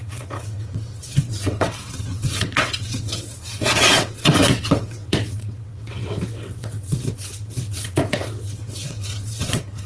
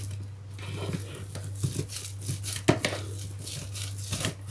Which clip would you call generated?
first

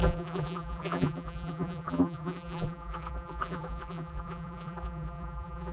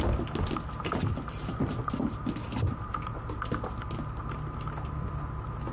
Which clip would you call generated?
first